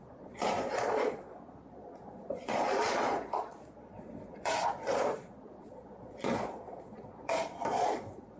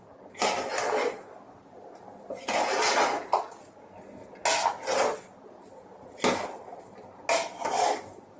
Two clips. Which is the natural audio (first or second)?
second